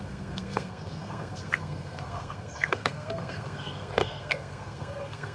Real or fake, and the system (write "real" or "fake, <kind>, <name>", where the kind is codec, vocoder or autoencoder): fake, codec, SNAC